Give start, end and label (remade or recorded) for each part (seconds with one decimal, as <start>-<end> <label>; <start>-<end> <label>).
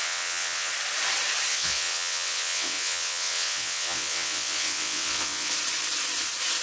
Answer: 0.0-0.7 remade; 0.7-1.5 recorded; 1.5-5.5 remade; 5.5-6.6 recorded